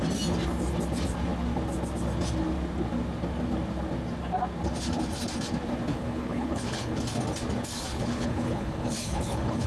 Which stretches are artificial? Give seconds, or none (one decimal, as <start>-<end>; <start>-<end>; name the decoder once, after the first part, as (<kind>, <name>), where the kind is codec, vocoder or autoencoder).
5.9-7.0 (codec, HILCodec); 7.9-9.7